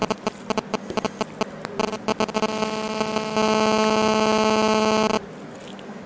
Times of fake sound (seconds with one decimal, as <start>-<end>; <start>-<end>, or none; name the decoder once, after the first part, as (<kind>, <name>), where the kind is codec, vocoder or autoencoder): none